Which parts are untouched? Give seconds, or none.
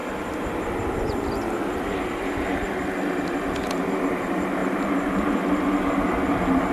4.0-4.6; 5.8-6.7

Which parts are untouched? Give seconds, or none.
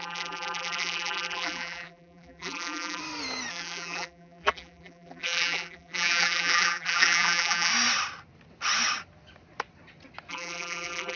3.0-3.5; 7.7-10.3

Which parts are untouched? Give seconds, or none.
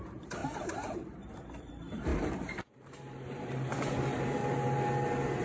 4.4-5.4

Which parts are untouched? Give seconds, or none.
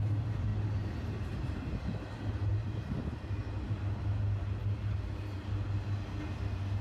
0.0-2.5; 3.4-6.8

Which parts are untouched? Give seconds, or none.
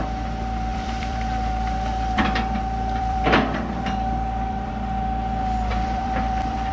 0.0-0.7; 4.7-5.7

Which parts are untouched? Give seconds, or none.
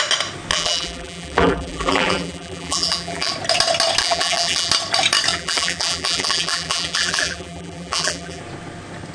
0.0-0.5; 3.3-4.0; 4.7-5.3; 8.4-9.1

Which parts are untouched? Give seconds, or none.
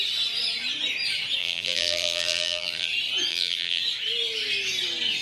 0.0-1.4; 2.9-3.3; 3.8-5.2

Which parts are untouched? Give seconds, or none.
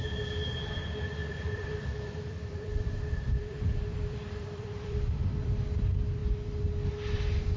0.0-1.2; 5.5-7.6